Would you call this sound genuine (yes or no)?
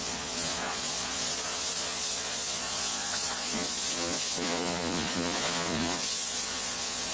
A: no